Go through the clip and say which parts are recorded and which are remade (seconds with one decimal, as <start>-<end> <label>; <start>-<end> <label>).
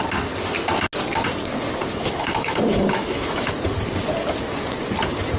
0.0-1.9 recorded; 1.9-3.5 remade; 3.5-5.4 recorded